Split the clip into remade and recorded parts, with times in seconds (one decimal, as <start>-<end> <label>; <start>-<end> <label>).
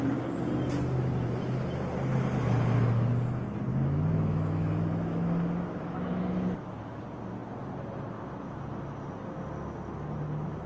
0.0-3.7 recorded; 3.7-7.0 remade; 7.0-10.7 recorded